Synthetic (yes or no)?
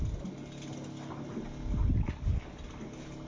no